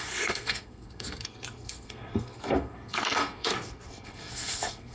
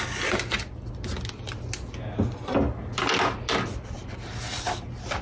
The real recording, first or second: second